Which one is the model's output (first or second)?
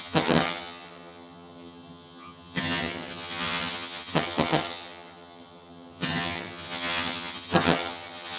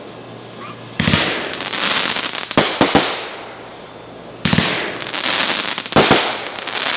first